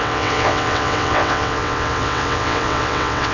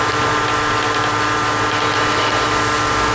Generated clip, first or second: first